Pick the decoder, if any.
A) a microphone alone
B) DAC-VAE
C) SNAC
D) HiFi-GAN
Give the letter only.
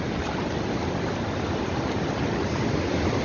A